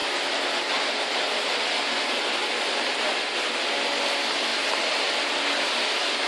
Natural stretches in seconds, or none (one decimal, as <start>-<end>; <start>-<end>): 0.0-6.3